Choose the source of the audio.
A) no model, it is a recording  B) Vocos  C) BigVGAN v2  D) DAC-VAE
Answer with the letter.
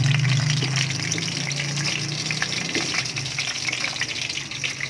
C